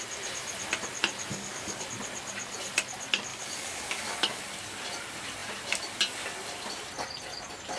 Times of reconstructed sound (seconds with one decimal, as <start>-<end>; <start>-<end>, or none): 1.3-1.8; 3.3-4.4